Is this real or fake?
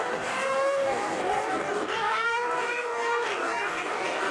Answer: fake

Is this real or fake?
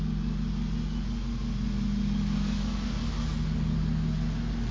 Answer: real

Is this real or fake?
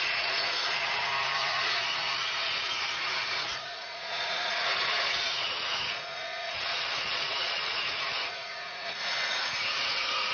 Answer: fake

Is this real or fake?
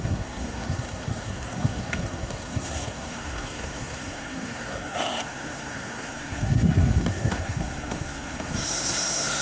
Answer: fake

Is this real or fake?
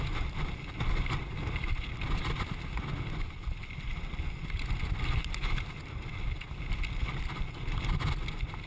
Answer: real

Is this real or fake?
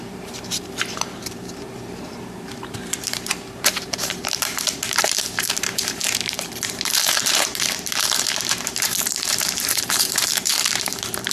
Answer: fake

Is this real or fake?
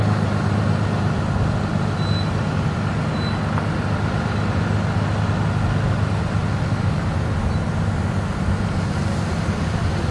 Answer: real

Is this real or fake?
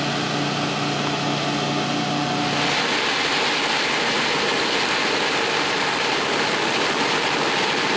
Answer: real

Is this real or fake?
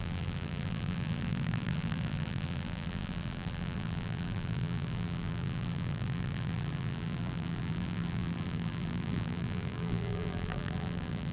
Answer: fake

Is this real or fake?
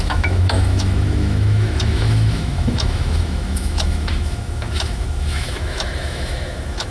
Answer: fake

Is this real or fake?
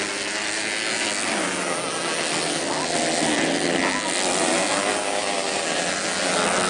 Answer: real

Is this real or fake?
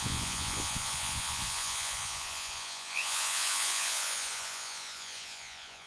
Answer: fake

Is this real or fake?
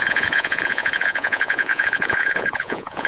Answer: fake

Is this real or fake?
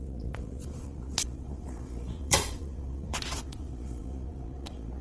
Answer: fake